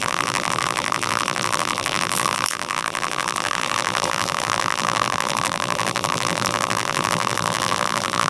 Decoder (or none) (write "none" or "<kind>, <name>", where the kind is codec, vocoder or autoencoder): vocoder, BigVGAN v2